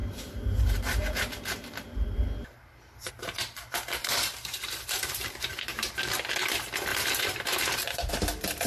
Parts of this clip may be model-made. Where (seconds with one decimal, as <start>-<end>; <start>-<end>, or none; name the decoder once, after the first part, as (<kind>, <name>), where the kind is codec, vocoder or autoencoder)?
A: 0.0-3.1 (vocoder, BigVGAN v2); 4.0-5.9; 6.9-8.1